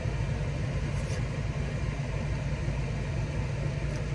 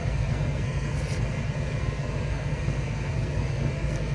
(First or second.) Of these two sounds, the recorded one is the first